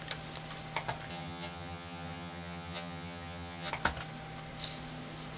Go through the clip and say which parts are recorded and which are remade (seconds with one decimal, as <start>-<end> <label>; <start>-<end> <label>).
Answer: 0.0-1.1 recorded; 1.1-3.7 remade; 3.7-5.4 recorded